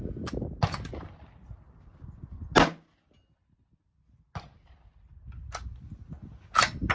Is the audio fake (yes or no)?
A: no